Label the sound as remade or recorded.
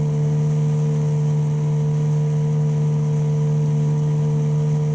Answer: recorded